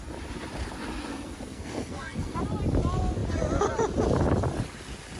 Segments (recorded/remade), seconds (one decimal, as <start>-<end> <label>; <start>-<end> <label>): 0.0-1.1 recorded; 1.1-2.4 remade; 2.4-5.2 recorded